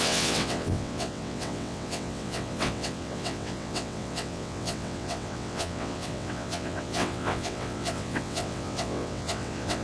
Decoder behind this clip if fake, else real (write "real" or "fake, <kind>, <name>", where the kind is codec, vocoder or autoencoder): fake, vocoder, WaveNeXt